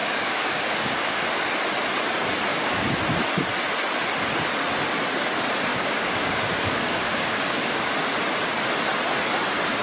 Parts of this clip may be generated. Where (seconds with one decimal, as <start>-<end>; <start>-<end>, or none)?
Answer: 0.0-1.2; 2.5-3.0; 5.7-7.9